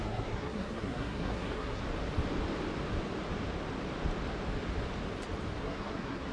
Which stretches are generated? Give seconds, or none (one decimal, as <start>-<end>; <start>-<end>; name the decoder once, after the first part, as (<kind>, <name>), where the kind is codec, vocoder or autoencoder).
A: 0.0-1.8 (codec, SNAC); 5.6-6.3